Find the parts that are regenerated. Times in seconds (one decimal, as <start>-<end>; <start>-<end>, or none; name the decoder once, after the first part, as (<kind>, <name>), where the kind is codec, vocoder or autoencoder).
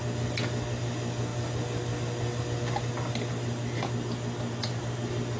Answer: none